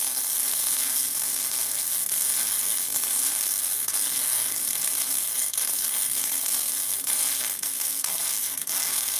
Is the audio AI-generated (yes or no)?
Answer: yes